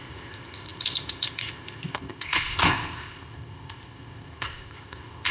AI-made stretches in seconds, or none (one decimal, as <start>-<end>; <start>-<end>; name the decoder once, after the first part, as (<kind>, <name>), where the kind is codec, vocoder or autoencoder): 0.0-5.3 (codec, ZipCodec)